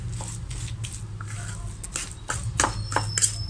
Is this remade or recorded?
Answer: recorded